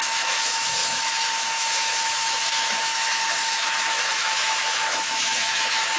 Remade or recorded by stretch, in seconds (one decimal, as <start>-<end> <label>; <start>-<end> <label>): 0.0-6.0 remade